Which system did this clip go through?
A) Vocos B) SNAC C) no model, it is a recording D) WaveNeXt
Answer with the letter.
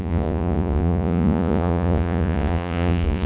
A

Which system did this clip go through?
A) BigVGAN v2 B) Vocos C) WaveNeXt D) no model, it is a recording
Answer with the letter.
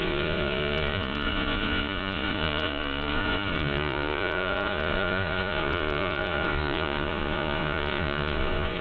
B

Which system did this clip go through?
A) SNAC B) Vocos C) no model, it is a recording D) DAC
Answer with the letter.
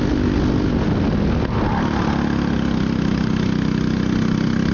C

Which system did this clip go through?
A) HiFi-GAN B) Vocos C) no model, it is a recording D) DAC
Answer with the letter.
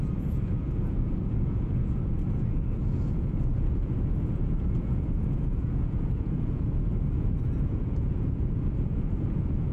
B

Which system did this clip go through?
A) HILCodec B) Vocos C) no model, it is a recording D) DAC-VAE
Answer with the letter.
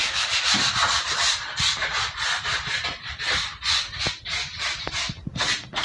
C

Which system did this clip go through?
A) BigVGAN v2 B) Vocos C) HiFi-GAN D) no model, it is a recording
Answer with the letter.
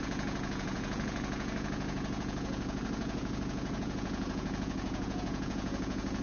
B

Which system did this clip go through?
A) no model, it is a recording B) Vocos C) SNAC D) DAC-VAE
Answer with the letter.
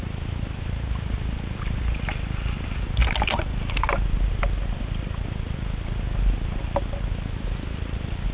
A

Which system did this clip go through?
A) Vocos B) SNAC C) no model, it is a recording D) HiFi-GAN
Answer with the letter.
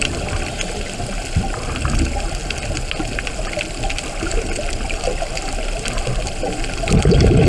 C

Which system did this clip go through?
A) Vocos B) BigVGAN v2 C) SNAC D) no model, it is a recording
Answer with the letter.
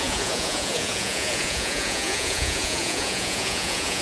A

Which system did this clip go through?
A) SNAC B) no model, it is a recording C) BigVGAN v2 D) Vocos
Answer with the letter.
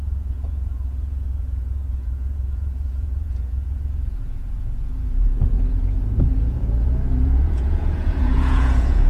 D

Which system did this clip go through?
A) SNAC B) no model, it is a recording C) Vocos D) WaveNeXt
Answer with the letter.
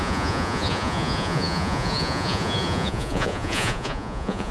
C